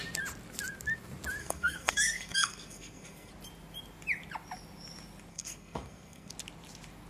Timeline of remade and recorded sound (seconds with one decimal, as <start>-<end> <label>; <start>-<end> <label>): 0.0-1.4 recorded; 1.4-3.3 remade; 3.3-5.3 recorded; 5.3-6.3 remade; 6.3-7.1 recorded